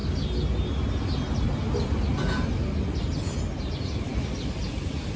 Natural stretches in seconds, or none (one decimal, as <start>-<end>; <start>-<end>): 0.0-5.2